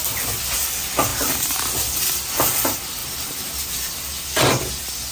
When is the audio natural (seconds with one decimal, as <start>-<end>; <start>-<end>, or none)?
0.0-3.0; 3.5-5.1